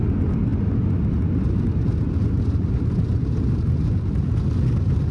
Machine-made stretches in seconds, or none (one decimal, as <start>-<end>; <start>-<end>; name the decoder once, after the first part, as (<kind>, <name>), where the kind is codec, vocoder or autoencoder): none